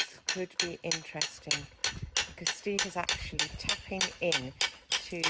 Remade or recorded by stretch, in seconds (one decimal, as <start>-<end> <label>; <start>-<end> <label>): 0.0-5.3 recorded